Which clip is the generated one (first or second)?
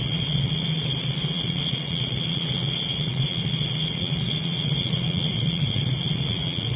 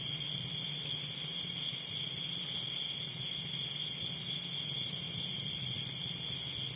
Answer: first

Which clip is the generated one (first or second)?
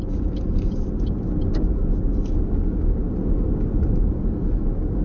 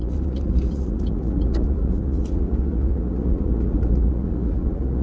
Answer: second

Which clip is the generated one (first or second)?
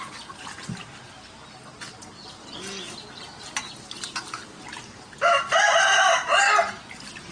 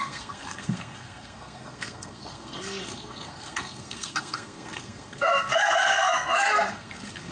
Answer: second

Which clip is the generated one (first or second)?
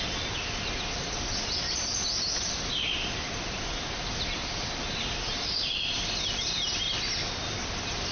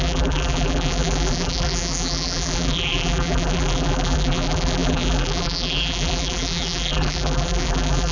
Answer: second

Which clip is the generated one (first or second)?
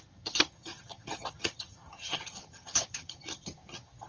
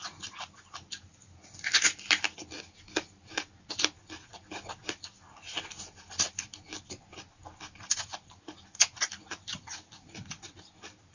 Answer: first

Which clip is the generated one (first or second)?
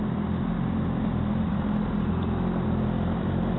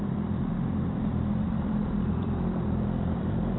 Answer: second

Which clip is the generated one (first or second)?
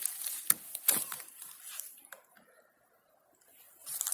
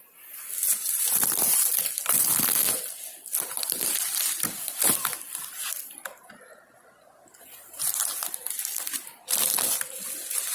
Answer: first